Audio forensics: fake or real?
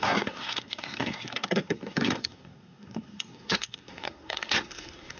fake